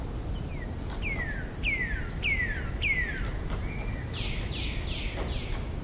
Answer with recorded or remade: recorded